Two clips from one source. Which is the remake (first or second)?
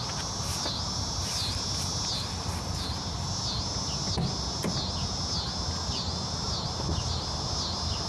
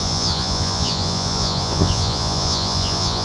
second